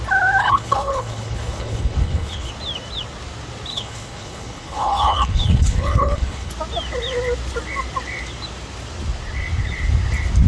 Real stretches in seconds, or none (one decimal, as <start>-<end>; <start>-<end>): 0.0-0.4; 2.5-3.7; 6.5-10.5